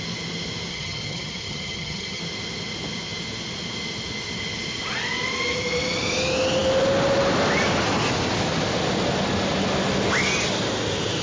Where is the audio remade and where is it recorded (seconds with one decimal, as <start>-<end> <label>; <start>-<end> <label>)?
0.0-0.7 recorded; 0.7-2.2 remade; 2.2-11.2 recorded